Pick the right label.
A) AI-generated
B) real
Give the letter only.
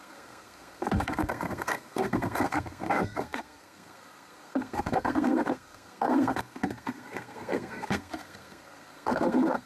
A